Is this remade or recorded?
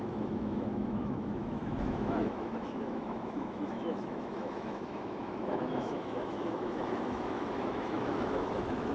remade